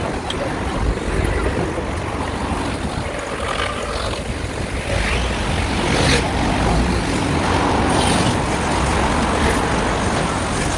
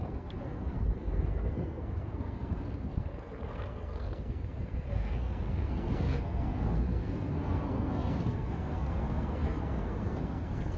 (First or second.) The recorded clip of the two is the first